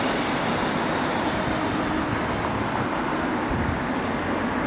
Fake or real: real